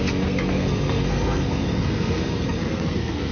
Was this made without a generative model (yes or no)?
no